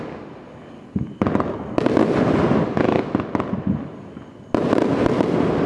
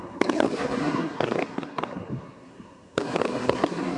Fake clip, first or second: second